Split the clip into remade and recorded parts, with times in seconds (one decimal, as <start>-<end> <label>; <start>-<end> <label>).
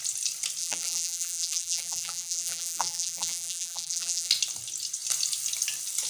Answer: 0.0-0.6 recorded; 0.6-4.3 remade; 4.3-6.1 recorded